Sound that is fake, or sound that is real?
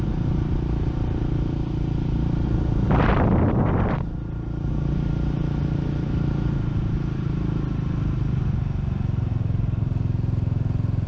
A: real